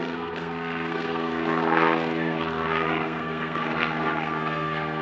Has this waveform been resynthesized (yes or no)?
yes